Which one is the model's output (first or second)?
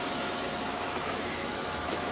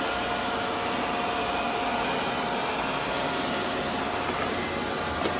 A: first